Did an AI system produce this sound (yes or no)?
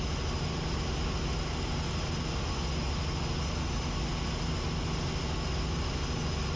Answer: no